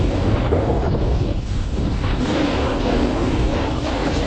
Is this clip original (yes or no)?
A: no